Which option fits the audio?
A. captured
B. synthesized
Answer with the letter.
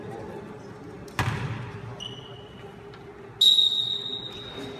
A